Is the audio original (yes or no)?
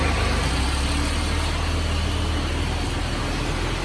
yes